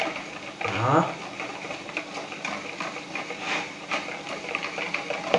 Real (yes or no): no